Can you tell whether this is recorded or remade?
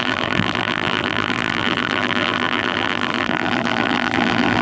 remade